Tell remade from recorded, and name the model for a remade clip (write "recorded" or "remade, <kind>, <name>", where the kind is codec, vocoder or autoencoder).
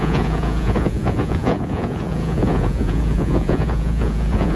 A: remade, vocoder, Vocos